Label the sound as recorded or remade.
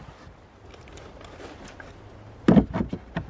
recorded